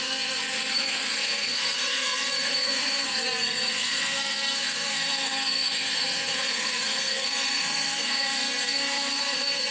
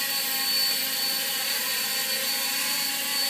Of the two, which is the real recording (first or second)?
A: second